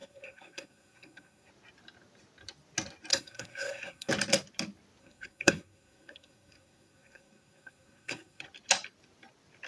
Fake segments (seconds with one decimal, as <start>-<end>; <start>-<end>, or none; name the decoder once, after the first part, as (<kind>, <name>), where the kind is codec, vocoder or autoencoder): 0.0-1.5 (codec, SNAC); 3.1-4.1; 5.0-8.4